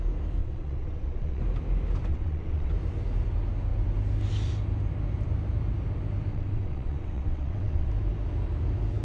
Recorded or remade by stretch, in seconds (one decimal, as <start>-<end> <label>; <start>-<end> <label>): 0.0-0.4 recorded; 0.4-1.4 remade; 1.4-2.1 recorded; 2.1-2.7 remade; 2.7-6.3 recorded; 6.3-7.9 remade; 7.9-9.0 recorded